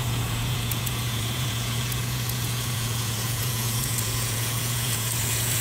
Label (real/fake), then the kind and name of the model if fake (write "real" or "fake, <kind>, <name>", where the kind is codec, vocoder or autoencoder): fake, vocoder, Vocos